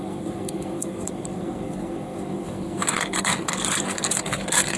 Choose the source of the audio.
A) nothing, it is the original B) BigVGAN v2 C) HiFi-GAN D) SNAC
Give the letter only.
D